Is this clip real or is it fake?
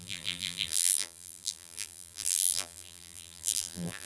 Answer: fake